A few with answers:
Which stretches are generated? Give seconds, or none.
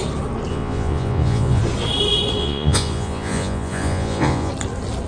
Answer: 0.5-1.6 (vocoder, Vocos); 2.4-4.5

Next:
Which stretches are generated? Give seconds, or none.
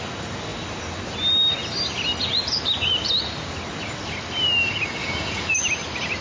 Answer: 5.0-5.5 (vocoder, Vocos)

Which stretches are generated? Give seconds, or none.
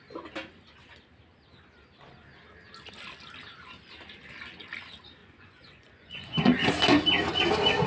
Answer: 5.2-6.7 (vocoder, Vocos)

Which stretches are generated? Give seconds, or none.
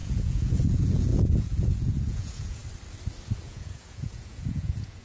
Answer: 0.0-2.6 (vocoder, Vocos); 3.4-5.0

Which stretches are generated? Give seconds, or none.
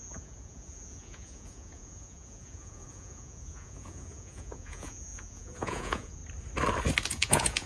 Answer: 0.0-6.2 (vocoder, Vocos); 7.1-7.7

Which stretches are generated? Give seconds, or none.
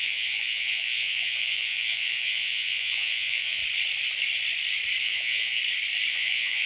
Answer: 0.0-3.6 (vocoder, Vocos); 5.0-5.6; 6.1-6.7